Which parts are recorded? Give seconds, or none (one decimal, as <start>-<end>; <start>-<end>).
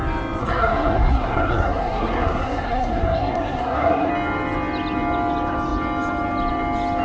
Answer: 0.0-0.4; 4.1-7.0